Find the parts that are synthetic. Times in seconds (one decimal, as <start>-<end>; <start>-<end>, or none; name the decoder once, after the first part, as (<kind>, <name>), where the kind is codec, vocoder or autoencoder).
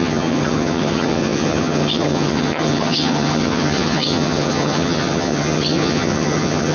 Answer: 0.0-6.7 (vocoder, HiFi-GAN)